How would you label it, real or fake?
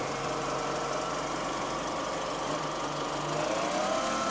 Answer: real